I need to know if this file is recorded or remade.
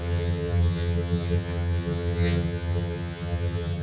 remade